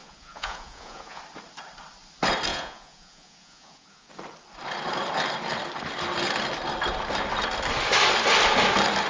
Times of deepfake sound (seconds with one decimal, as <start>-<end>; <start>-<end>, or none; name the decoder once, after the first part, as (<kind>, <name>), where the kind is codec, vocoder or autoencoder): 0.0-1.2 (vocoder, Vocos); 2.5-4.1